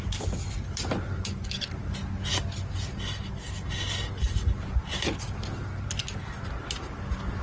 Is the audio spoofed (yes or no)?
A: no